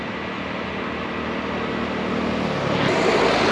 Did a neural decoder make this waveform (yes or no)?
no